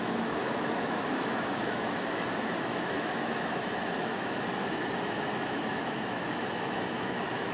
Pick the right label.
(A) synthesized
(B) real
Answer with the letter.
A